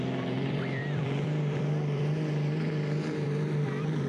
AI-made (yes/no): yes